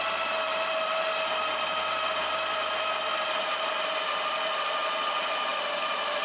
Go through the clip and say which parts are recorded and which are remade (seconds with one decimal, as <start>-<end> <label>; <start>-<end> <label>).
0.0-6.2 recorded